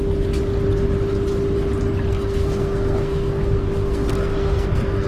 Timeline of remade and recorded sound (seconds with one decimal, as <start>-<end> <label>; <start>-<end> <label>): 0.0-2.1 recorded; 2.1-5.1 remade